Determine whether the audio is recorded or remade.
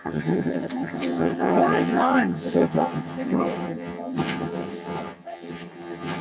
remade